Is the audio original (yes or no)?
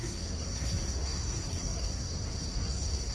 no